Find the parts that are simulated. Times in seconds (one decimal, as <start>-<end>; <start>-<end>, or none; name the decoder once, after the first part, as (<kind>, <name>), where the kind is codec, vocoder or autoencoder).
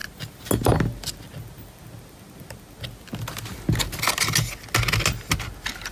none